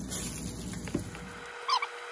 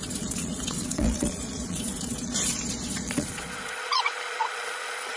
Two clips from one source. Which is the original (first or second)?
first